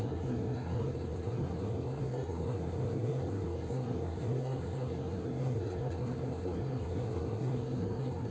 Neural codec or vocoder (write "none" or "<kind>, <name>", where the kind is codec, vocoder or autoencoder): codec, SNAC